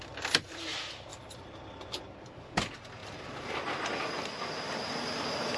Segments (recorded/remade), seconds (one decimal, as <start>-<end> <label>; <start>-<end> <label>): 0.0-1.1 recorded; 1.1-1.6 remade; 1.6-3.0 recorded; 3.0-3.6 remade; 3.6-5.6 recorded